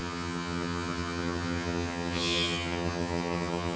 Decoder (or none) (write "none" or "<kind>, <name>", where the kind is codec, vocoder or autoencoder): vocoder, HiFi-GAN